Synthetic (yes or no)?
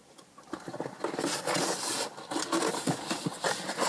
yes